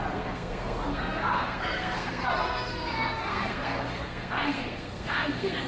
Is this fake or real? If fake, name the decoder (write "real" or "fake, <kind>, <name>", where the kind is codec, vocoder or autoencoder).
fake, codec, SNAC